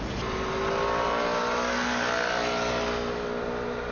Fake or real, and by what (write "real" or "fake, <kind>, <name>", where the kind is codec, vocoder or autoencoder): real